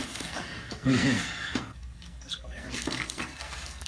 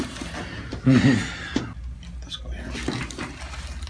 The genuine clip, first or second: second